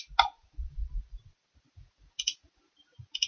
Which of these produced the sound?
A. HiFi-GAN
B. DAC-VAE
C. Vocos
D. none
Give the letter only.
D